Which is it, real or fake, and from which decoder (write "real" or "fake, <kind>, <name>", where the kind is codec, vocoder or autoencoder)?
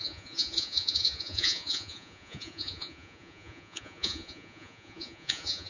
fake, vocoder, Vocos